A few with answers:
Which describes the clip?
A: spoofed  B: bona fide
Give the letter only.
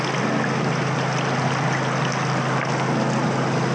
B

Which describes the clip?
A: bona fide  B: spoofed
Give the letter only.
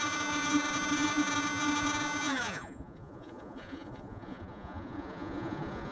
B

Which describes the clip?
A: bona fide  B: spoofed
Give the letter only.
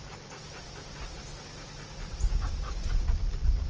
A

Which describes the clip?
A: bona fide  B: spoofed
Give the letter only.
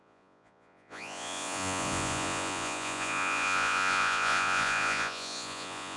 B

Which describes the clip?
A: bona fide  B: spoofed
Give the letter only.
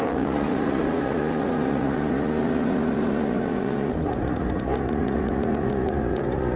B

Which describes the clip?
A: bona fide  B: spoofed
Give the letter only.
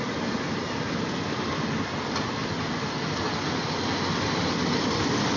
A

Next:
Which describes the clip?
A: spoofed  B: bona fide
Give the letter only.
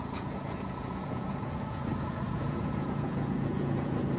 A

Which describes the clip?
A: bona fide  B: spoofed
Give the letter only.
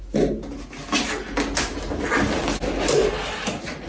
A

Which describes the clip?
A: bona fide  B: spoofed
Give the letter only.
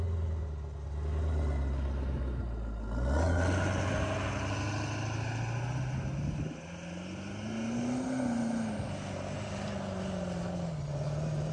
A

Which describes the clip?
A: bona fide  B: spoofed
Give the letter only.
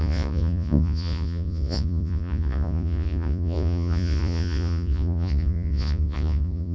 B